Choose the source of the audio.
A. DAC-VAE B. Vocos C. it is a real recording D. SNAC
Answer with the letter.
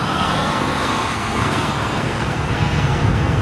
D